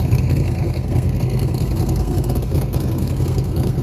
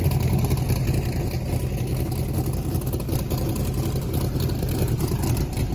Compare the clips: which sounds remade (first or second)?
first